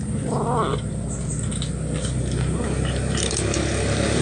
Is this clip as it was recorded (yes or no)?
yes